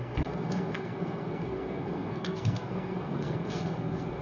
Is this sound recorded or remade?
remade